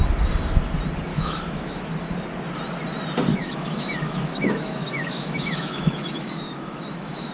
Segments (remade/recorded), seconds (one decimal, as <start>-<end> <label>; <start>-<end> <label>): 0.0-1.1 recorded; 1.1-1.9 remade; 1.9-3.3 recorded; 3.3-7.3 remade